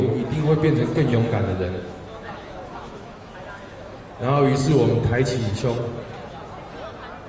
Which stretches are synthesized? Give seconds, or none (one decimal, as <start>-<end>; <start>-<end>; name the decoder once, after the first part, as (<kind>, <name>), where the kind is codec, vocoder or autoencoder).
1.1-4.0 (autoencoder, DAC-VAE)